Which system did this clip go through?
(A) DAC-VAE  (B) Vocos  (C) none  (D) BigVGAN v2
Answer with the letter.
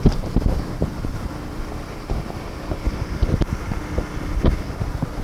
C